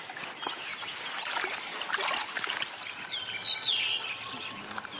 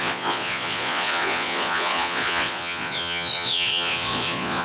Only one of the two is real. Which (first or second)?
first